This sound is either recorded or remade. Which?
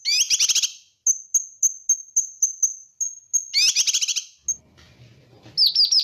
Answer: recorded